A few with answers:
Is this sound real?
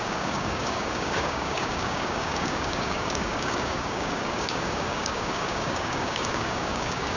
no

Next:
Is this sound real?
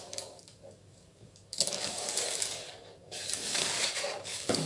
no